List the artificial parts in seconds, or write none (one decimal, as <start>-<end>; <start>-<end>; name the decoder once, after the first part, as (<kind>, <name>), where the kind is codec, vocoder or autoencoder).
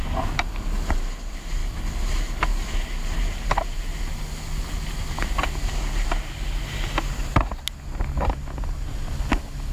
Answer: none